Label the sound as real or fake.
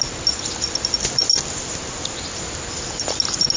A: real